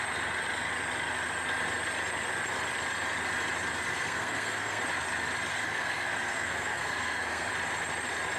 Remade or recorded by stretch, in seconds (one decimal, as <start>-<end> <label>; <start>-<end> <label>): 0.0-3.9 recorded; 3.9-4.8 remade; 4.8-5.5 recorded; 5.5-7.5 remade; 7.5-8.4 recorded